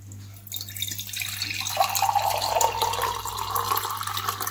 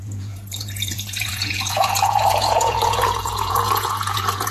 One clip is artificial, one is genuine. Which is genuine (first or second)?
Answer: first